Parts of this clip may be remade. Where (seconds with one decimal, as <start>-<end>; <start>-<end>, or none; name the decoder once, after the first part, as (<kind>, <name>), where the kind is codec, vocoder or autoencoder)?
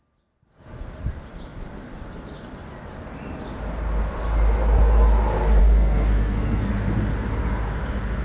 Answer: 5.6-6.7 (codec, SNAC)